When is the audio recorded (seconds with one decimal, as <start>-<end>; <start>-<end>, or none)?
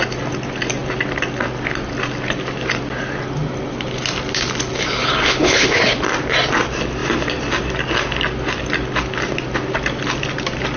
0.0-5.2; 5.8-10.8